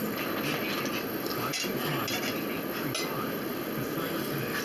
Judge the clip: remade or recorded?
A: recorded